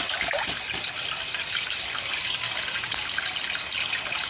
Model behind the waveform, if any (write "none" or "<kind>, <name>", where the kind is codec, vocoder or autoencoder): none